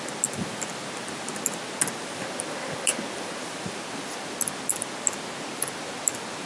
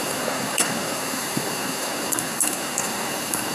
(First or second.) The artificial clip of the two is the second